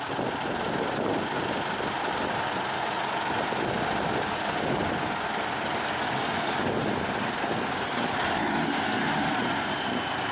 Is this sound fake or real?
real